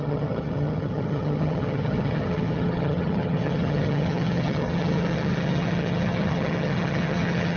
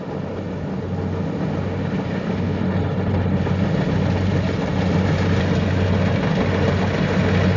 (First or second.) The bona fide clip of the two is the second